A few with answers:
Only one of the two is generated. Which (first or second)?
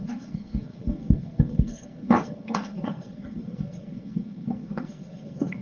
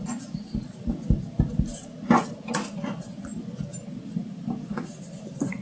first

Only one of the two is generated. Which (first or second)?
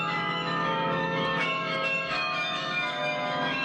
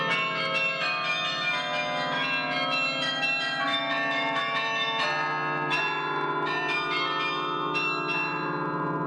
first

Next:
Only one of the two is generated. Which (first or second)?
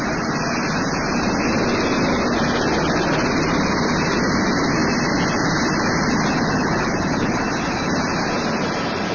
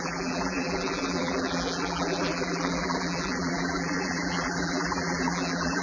second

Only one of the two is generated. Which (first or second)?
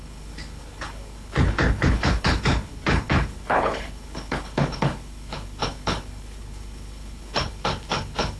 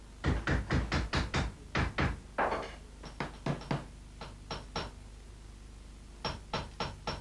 first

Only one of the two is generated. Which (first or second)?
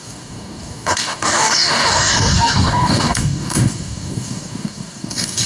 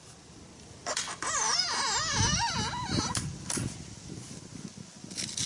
first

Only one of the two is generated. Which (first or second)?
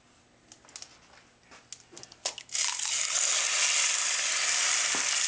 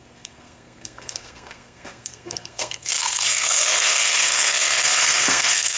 second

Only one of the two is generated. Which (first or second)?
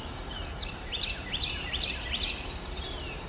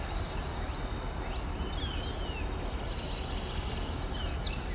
first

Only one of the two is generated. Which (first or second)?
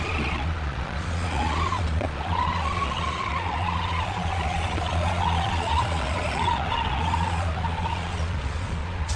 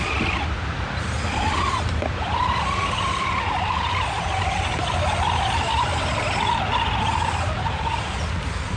first